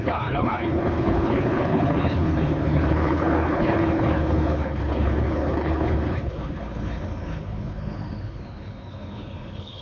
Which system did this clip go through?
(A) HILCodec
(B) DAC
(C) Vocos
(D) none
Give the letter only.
A